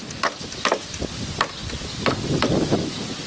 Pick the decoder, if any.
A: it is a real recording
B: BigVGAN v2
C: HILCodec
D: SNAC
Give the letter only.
A